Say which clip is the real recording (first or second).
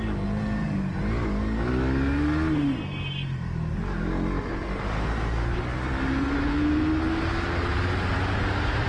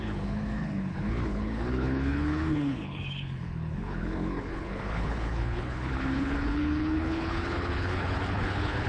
first